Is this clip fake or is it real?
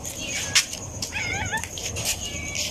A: fake